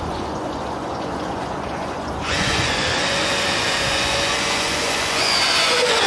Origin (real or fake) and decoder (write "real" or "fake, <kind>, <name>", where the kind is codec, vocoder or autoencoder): fake, vocoder, Vocos